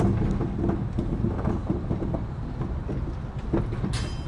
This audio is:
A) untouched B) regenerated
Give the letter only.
A